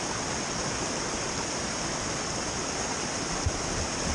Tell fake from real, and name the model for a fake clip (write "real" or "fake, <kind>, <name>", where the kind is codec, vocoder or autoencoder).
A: real